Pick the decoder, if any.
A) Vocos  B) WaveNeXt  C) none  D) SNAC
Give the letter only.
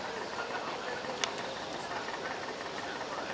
C